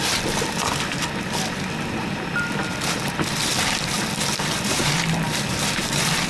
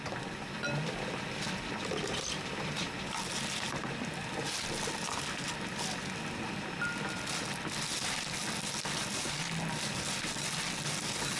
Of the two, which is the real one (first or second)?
second